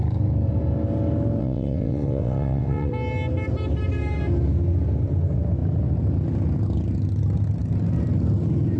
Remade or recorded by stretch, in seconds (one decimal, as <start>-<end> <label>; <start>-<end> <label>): 0.0-1.4 recorded; 1.4-2.9 remade; 2.9-8.8 recorded